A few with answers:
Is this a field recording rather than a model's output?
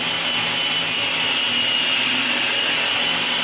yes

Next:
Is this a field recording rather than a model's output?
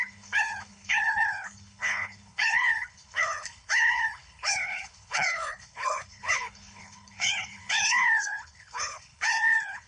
no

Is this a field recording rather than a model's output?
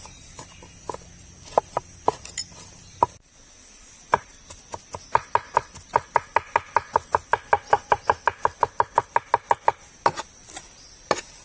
yes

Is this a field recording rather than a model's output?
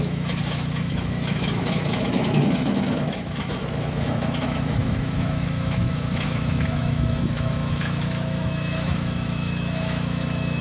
no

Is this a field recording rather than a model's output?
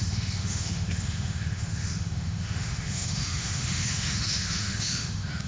no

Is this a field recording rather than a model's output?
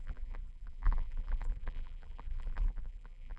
no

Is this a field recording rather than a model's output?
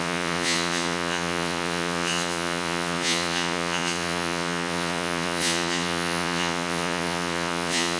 no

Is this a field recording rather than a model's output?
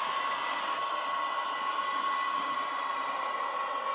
yes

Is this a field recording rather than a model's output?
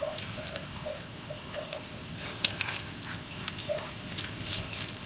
no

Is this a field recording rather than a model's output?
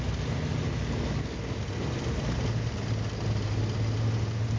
yes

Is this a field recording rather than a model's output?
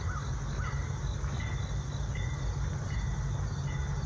yes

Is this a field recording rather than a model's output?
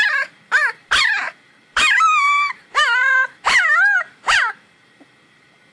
no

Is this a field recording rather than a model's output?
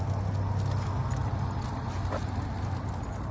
yes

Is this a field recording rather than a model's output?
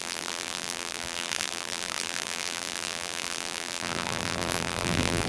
no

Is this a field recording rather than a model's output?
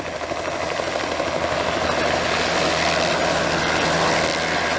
yes